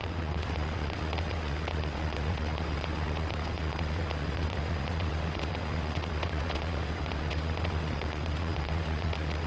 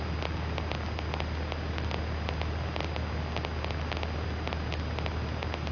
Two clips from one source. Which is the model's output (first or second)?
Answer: first